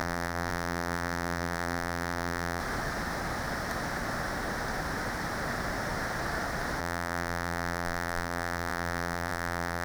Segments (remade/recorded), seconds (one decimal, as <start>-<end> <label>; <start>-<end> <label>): 0.0-2.6 remade; 2.6-6.8 recorded; 6.8-9.8 remade